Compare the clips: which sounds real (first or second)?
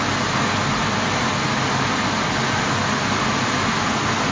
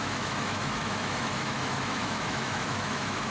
first